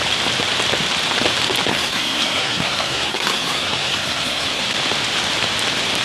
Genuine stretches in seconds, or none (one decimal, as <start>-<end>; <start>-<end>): 0.0-1.7; 4.6-6.0